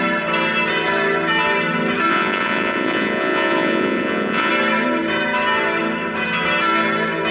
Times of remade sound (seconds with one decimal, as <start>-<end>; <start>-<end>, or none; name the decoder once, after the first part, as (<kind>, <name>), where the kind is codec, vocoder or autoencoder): 2.1-4.5 (vocoder, Vocos)